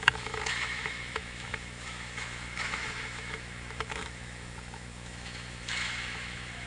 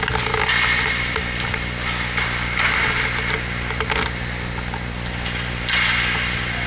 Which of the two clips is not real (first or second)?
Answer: first